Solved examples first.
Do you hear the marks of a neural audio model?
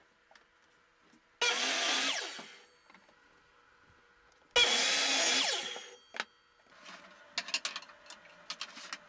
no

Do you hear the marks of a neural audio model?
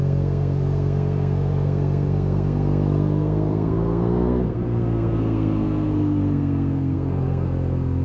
yes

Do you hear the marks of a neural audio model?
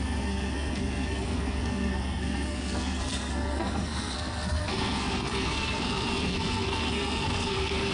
yes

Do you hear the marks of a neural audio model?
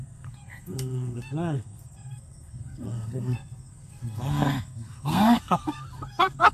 yes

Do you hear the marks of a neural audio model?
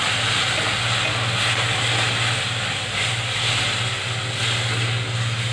no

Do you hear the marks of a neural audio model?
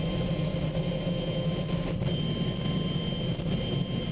no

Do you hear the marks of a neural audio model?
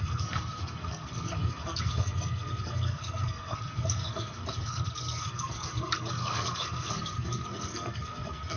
yes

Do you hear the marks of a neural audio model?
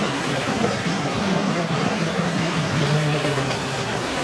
yes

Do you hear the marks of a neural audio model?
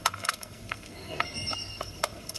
yes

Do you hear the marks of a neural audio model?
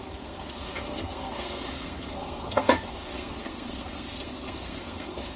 yes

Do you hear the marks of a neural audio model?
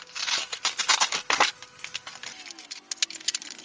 no